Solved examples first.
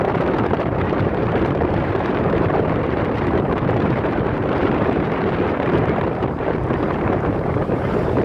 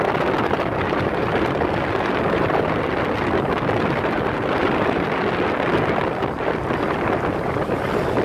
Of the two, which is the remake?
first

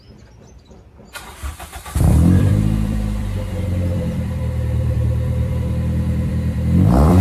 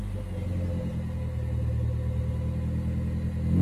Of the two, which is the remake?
first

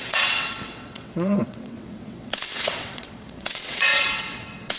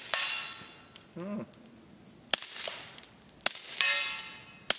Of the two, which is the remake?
first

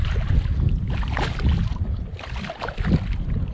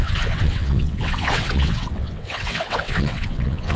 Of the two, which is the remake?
second